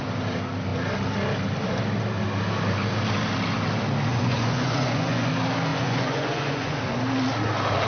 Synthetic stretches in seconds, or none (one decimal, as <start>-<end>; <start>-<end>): 4.1-5.3; 5.7-6.8